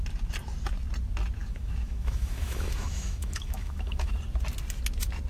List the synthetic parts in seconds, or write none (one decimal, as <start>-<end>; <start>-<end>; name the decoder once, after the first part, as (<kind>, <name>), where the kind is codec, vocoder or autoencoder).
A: 1.4-4.1 (autoencoder, DAC-VAE)